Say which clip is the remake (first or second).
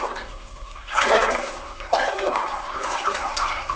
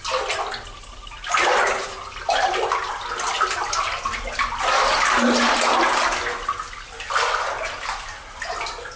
first